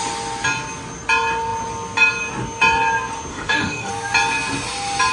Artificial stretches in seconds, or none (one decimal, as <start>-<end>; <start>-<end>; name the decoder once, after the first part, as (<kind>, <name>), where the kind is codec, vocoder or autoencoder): 3.3-3.9 (autoencoder, DAC-VAE)